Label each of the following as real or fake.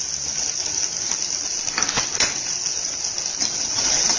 real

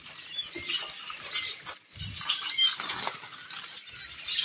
real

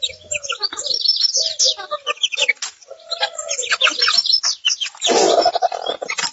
real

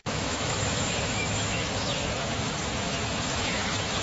fake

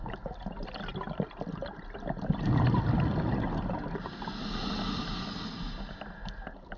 real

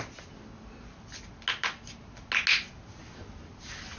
real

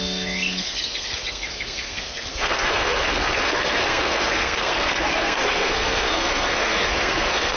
fake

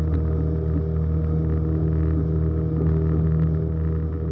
real